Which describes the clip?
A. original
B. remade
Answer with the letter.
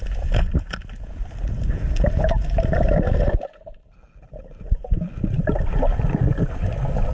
A